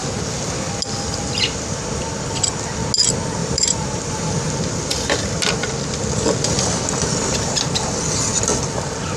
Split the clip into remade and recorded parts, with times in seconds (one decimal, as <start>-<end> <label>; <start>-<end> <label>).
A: 0.0-3.4 recorded; 3.4-4.3 remade; 4.3-4.9 recorded; 4.9-5.4 remade; 5.4-9.2 recorded